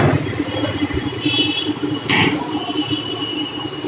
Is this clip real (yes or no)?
yes